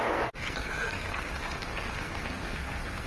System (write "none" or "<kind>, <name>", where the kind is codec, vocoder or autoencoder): codec, SNAC